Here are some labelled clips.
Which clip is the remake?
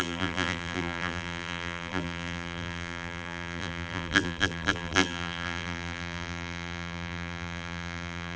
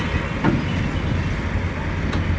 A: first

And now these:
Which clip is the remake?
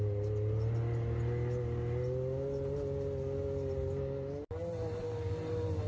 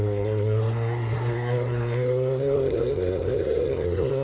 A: second